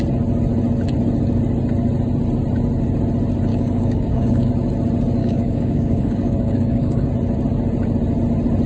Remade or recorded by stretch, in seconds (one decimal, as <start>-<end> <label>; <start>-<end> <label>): 0.0-3.5 recorded; 3.5-4.5 remade; 4.5-5.2 recorded; 5.2-7.1 remade; 7.1-8.7 recorded